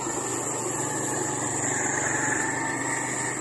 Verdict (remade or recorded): recorded